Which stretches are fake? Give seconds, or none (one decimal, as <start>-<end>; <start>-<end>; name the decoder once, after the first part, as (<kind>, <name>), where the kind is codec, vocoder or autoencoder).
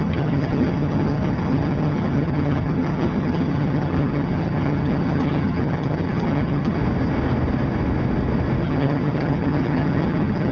0.0-6.8 (vocoder, HiFi-GAN); 8.6-10.5